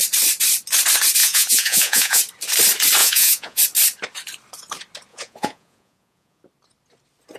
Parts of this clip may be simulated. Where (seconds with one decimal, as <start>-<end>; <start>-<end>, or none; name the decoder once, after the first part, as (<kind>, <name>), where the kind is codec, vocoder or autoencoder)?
1.2-2.2 (vocoder, Vocos); 3.0-3.6; 5.1-6.4